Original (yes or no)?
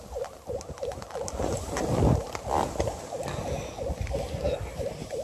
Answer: yes